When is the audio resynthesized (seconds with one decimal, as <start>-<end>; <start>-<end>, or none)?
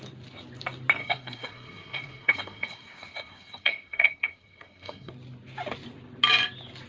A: 1.0-5.1